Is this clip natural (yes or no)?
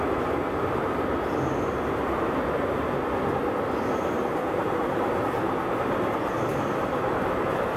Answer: yes